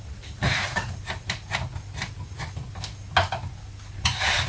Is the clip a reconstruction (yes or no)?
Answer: no